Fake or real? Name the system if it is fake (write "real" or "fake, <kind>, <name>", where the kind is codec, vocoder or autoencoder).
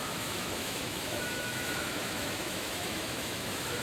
fake, autoencoder, DAC-VAE